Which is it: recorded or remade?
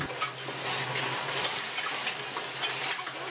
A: recorded